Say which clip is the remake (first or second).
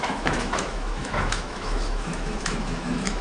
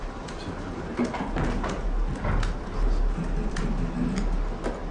first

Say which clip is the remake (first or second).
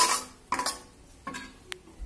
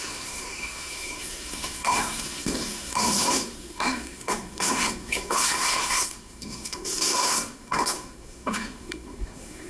second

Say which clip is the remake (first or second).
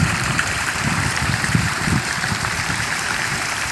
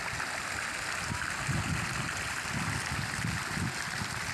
first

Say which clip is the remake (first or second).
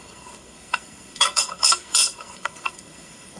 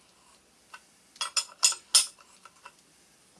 first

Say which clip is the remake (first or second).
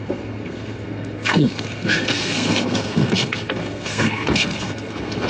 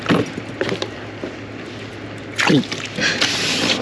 first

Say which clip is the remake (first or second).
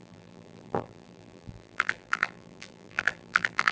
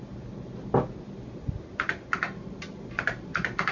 first